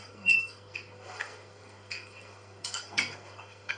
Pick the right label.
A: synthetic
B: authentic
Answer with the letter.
A